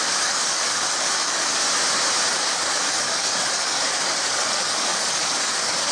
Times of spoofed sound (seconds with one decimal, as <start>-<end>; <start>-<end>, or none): 0.0-1.6; 2.3-5.9